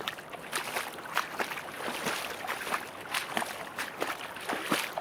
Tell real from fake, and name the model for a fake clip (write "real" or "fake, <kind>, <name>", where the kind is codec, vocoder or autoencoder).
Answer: real